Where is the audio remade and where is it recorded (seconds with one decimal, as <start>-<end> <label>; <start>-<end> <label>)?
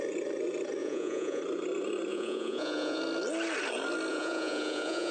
0.0-0.8 recorded; 0.8-1.4 remade; 1.4-2.1 recorded; 2.1-3.0 remade; 3.0-4.1 recorded; 4.1-5.1 remade